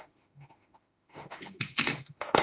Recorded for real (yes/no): no